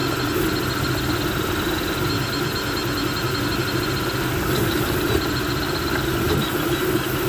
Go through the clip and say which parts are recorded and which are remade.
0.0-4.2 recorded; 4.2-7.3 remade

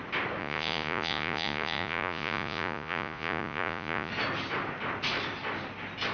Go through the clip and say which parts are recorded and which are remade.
0.0-0.4 recorded; 0.4-4.1 remade; 4.1-6.1 recorded

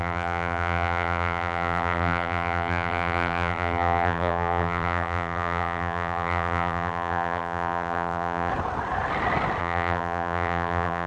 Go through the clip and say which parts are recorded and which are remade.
0.0-8.5 remade; 8.5-9.6 recorded; 9.6-11.1 remade

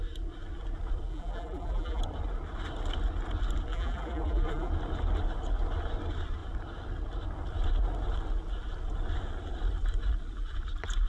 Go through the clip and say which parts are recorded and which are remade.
0.0-1.1 recorded; 1.1-2.0 remade; 2.0-3.7 recorded; 3.7-4.7 remade; 4.7-11.1 recorded

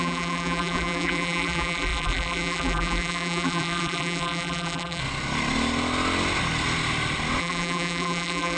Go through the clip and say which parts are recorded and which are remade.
0.0-5.0 remade; 5.0-7.4 recorded; 7.4-8.6 remade